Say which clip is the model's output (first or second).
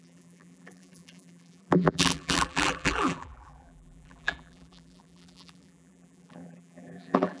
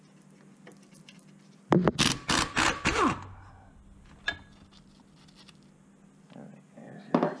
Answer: first